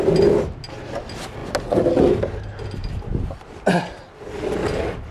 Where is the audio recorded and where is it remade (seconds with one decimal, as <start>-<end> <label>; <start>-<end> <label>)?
0.0-5.1 recorded